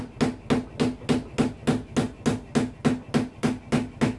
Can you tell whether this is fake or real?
real